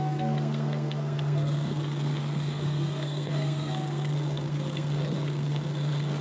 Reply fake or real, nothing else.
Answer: fake